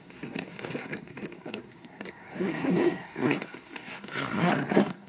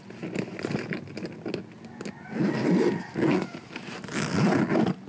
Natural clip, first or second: second